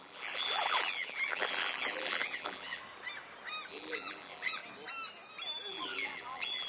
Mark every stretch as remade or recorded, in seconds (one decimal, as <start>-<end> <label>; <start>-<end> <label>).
0.0-2.8 remade; 2.8-3.7 recorded; 3.7-4.6 remade; 4.6-5.7 recorded; 5.7-6.7 remade